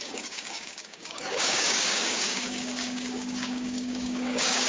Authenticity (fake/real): fake